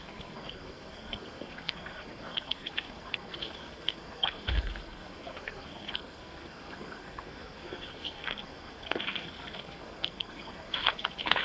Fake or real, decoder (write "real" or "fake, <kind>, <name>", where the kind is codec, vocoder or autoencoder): fake, codec, SNAC